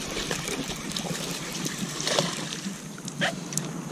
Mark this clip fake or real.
real